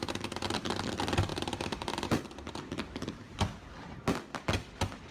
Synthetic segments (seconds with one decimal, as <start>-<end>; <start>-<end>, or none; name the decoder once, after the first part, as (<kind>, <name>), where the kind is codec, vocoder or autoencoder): none